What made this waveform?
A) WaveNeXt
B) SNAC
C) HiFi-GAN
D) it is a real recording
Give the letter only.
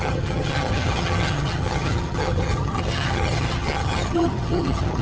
C